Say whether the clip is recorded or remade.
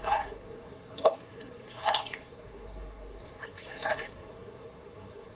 remade